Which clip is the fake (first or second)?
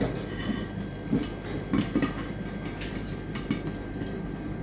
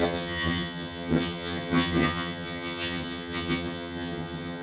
second